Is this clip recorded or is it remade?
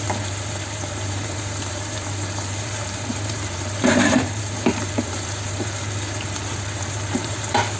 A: remade